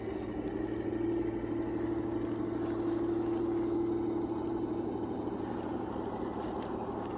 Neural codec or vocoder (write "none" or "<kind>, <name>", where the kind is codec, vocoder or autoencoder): none